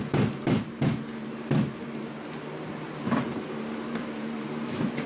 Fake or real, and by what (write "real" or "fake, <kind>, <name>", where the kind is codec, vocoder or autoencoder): fake, vocoder, BigVGAN v2